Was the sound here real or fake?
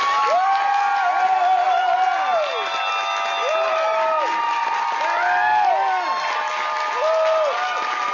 real